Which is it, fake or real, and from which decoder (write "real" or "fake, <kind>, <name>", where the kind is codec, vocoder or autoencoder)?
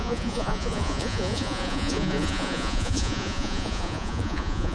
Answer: fake, vocoder, Vocos